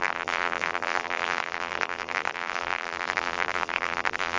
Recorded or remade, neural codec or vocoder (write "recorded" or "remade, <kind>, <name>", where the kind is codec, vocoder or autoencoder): remade, vocoder, BigVGAN v2